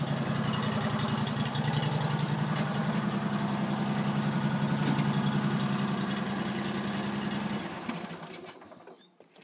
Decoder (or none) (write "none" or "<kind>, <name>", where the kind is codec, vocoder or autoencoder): none